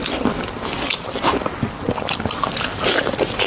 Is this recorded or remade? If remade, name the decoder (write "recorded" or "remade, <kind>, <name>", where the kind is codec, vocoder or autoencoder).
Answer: recorded